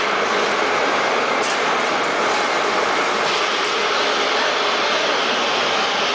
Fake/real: real